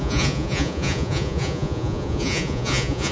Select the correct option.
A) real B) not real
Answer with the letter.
B